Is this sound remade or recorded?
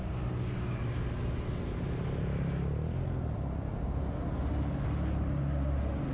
recorded